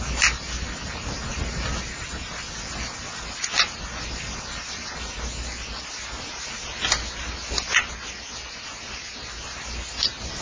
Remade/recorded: recorded